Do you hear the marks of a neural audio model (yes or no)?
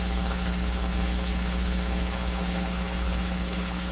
yes